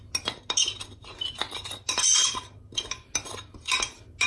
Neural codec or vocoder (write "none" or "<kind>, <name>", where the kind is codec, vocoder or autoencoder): none